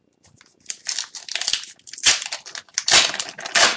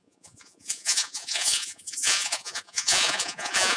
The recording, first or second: first